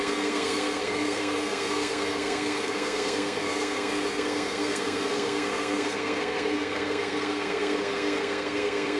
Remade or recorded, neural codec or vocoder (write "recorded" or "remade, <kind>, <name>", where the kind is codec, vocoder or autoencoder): remade, codec, SNAC